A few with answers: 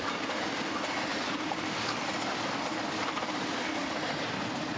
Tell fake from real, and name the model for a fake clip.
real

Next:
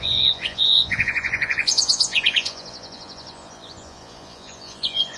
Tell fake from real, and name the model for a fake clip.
fake, vocoder, Vocos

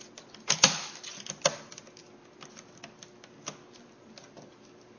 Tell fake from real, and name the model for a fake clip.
real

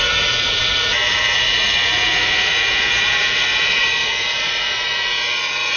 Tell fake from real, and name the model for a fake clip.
fake, vocoder, Vocos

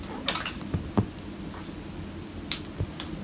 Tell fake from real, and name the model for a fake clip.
real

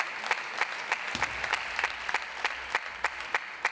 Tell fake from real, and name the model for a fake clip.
real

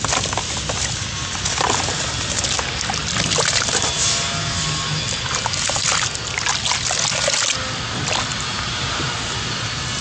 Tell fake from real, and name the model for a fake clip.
real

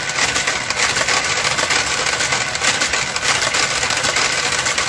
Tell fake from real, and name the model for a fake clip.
real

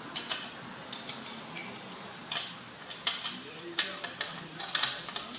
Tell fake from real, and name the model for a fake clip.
real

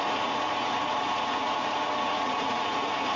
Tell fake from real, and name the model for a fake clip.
fake, vocoder, Vocos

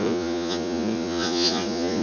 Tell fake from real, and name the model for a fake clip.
fake, vocoder, Vocos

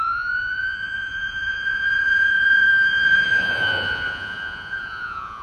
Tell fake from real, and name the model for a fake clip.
fake, vocoder, Vocos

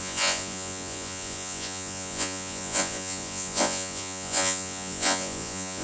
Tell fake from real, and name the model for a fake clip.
fake, vocoder, Vocos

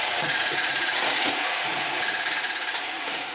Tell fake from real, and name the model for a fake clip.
fake, vocoder, Vocos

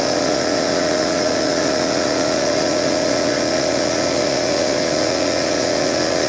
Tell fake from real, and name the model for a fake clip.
fake, vocoder, Vocos